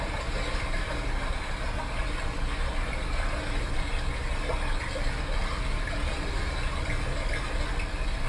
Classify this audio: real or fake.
real